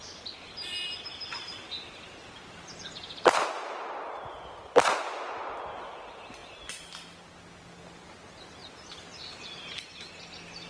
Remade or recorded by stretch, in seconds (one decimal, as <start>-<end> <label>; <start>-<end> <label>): 0.0-1.1 recorded; 1.1-4.2 remade; 4.2-10.7 recorded